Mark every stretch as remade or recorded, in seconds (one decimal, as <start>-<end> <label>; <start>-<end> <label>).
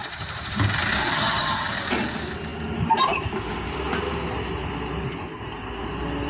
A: 0.0-1.0 recorded; 1.0-1.7 remade; 1.7-6.3 recorded